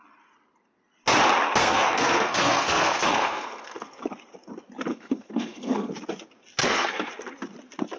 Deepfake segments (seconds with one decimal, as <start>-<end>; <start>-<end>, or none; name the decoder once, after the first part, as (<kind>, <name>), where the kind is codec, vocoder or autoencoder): 1.6-4.0 (codec, SNAC); 4.9-5.9; 6.6-7.1